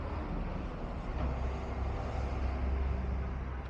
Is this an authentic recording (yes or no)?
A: yes